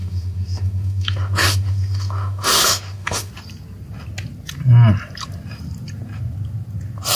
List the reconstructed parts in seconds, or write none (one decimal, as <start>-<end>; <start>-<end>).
0.0-3.3